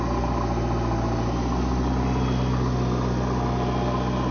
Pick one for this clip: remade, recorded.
recorded